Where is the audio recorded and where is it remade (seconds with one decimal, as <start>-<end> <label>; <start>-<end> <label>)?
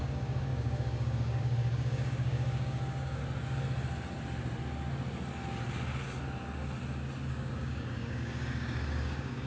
0.0-3.2 remade; 3.2-7.3 recorded; 7.3-9.5 remade